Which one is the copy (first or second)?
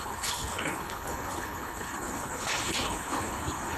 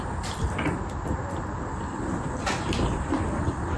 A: first